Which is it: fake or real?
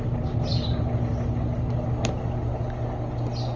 real